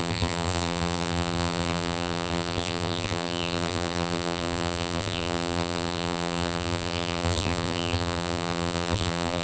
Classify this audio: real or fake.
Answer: fake